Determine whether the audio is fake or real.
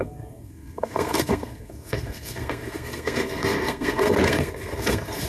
fake